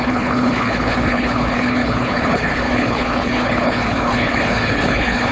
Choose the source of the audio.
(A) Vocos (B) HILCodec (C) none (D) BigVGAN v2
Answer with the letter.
B